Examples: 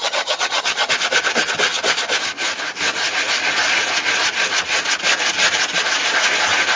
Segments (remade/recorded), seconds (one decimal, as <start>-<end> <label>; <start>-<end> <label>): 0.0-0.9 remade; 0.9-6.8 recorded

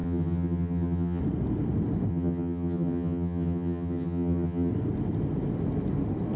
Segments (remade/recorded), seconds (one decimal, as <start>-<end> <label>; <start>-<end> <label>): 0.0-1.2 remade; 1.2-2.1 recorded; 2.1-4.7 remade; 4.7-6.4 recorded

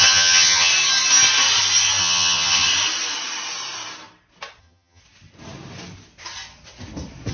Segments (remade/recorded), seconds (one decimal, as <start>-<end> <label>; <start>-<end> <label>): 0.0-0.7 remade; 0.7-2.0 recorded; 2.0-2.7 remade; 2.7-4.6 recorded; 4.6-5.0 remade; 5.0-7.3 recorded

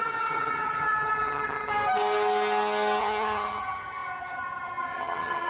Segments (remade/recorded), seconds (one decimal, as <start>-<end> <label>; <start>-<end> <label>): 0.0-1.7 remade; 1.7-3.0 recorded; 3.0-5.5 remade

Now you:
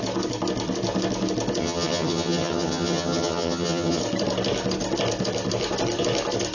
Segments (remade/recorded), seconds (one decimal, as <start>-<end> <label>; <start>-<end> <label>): 0.0-1.6 recorded; 1.6-4.0 remade; 4.0-6.5 recorded